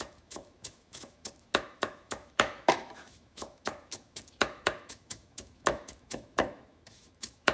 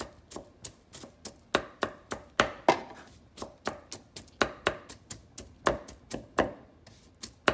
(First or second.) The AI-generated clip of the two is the first